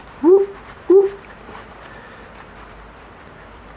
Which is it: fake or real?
fake